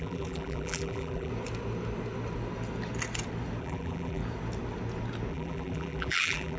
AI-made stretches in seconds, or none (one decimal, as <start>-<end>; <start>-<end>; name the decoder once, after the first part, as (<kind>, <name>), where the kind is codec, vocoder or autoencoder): 0.0-1.3 (vocoder, BigVGAN v2); 3.6-4.2; 5.3-6.6